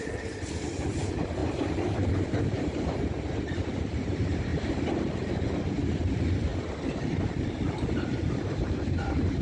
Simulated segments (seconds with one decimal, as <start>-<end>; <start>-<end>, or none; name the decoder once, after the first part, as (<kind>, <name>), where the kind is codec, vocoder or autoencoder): 0.0-6.5 (vocoder, BigVGAN v2); 7.2-9.4

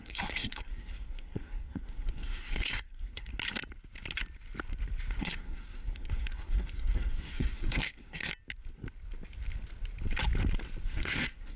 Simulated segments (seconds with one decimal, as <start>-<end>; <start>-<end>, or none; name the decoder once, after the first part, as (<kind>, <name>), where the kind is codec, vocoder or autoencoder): 0.0-3.3 (codec, SNAC); 5.2-8.3; 10.8-11.6

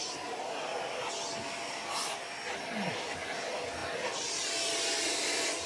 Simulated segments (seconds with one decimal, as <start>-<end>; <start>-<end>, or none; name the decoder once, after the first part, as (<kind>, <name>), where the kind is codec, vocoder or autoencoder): none

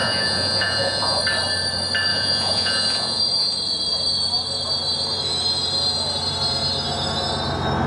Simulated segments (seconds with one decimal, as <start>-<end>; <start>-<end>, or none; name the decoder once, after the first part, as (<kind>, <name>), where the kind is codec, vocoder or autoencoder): 0.0-1.2 (vocoder, Vocos); 2.1-3.2

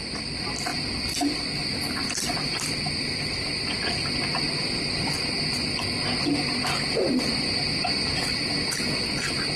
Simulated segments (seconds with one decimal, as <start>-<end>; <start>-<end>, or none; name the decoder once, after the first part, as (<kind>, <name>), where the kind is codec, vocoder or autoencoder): none

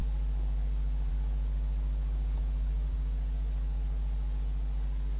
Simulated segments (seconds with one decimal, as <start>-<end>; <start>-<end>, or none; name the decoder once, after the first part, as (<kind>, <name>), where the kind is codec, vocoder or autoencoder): none

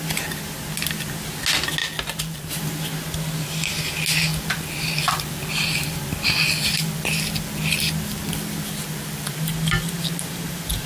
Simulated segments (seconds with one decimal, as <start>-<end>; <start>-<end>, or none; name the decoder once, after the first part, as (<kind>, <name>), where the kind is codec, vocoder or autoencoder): 1.8-2.5 (vocoder, BigVGAN v2); 4.3-9.3

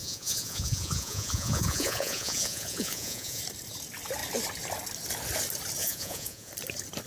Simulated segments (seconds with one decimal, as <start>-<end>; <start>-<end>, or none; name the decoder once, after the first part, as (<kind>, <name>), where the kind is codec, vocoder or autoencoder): 0.0-3.4 (vocoder, Vocos); 5.8-6.5